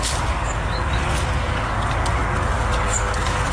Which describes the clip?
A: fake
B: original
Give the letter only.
A